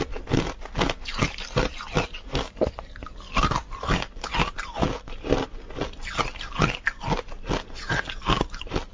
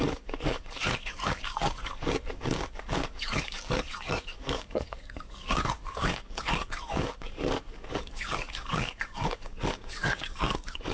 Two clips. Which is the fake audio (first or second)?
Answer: second